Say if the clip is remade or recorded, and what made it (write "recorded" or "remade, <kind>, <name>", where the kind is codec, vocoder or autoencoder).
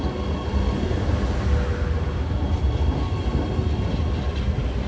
recorded